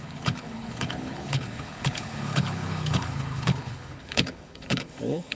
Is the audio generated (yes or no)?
yes